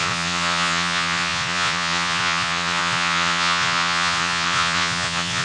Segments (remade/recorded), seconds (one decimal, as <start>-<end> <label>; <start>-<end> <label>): 0.0-5.4 remade